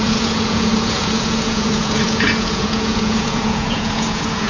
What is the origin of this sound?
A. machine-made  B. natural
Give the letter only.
A